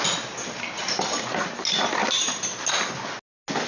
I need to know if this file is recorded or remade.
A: recorded